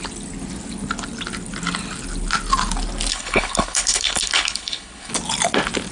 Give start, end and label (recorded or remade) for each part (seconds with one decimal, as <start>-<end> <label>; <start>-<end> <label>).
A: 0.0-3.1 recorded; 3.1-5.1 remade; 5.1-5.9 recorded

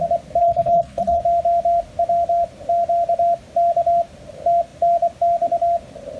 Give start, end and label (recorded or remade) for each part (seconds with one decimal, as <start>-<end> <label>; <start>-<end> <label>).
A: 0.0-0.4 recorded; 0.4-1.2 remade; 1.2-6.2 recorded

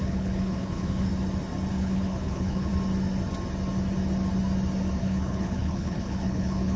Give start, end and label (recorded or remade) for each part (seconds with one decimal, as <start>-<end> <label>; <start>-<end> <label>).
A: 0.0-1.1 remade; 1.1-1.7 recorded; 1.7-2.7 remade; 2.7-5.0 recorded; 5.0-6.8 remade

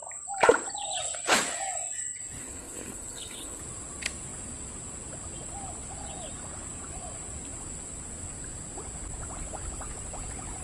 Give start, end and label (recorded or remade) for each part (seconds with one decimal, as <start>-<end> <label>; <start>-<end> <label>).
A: 0.0-2.4 recorded; 2.4-3.6 remade; 3.6-10.6 recorded